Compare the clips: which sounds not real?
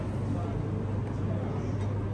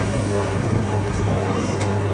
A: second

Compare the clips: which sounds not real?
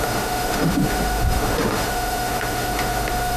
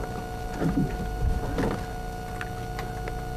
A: first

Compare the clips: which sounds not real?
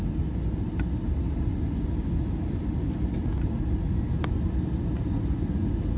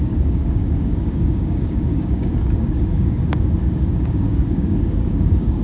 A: second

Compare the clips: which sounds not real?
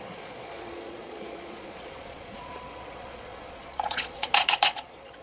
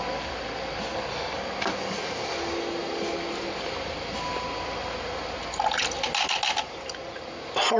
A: first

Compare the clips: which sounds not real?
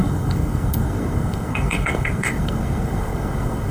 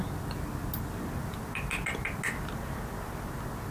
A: first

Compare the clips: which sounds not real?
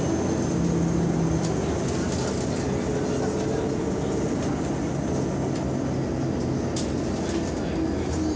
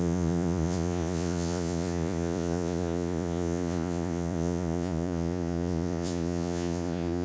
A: second